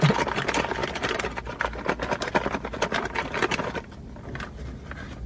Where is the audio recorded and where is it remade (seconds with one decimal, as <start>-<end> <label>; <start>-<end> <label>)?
0.0-5.3 recorded